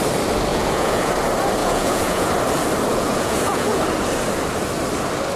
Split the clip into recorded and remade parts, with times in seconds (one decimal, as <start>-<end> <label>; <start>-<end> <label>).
0.0-0.5 recorded; 0.5-1.1 remade; 1.1-1.6 recorded; 1.6-2.3 remade; 2.3-2.9 recorded; 2.9-3.8 remade; 3.8-5.4 recorded